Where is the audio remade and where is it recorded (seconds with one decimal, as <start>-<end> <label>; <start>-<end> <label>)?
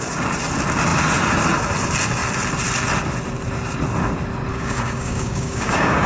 0.0-4.5 recorded; 4.5-6.1 remade